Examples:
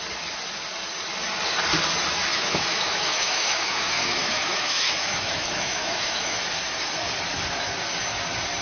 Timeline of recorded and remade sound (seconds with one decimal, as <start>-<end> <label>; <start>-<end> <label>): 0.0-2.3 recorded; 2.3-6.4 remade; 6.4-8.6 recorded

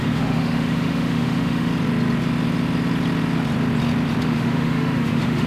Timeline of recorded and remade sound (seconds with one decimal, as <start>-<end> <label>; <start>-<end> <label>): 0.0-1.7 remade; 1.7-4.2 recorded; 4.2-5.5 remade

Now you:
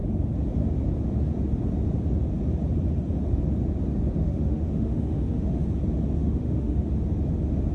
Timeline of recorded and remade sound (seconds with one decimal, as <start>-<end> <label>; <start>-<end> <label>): 0.0-4.2 recorded; 4.2-5.6 remade; 5.6-6.2 recorded; 6.2-6.9 remade; 6.9-7.7 recorded

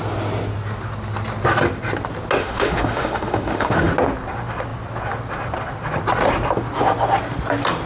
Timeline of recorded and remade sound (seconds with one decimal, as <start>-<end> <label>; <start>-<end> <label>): 0.0-2.4 recorded; 2.4-3.9 remade; 3.9-7.9 recorded

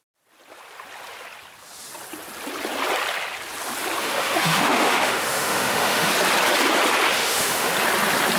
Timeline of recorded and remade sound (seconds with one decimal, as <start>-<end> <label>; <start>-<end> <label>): 0.0-4.0 recorded; 4.0-6.1 remade; 6.1-7.2 recorded; 7.2-7.7 remade; 7.7-8.4 recorded

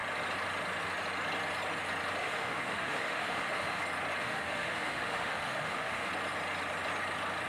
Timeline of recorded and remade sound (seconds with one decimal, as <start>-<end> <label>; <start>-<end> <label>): 0.0-2.2 recorded; 2.2-3.8 remade; 3.8-4.2 recorded; 4.2-6.1 remade; 6.1-7.5 recorded